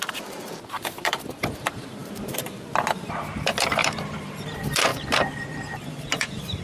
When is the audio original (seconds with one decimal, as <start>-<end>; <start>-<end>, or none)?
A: none